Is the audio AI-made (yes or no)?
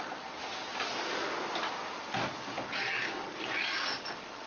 no